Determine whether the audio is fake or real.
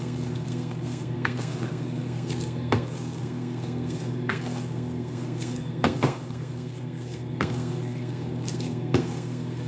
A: fake